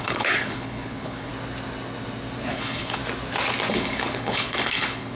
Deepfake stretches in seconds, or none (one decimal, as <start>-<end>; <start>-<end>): 0.0-1.3; 2.5-3.0; 3.7-5.1